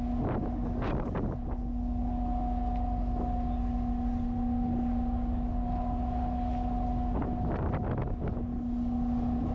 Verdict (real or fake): real